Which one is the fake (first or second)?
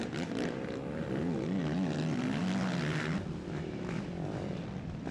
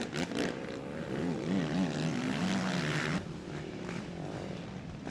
second